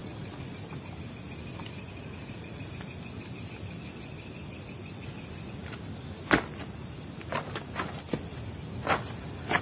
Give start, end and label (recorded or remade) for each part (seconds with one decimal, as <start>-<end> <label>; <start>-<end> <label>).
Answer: 0.0-0.6 remade; 0.6-1.7 recorded; 1.7-2.7 remade; 2.7-9.6 recorded